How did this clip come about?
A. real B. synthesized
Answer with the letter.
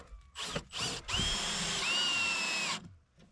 A